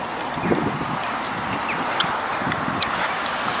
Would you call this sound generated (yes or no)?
no